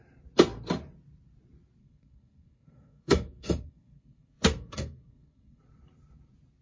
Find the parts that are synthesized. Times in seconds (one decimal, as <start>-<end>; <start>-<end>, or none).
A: 1.8-5.6